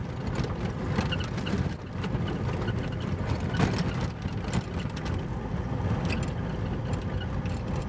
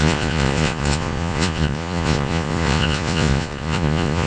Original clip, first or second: first